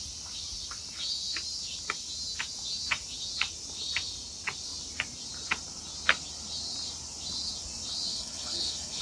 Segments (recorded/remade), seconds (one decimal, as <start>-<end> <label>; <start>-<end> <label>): 0.0-8.1 recorded; 8.1-9.0 remade